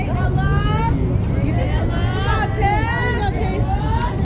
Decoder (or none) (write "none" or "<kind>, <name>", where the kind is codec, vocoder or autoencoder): none